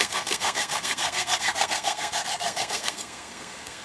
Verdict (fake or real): fake